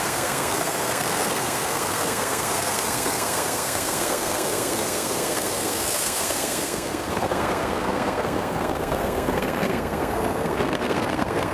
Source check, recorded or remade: remade